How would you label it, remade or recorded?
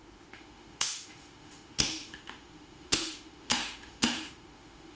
remade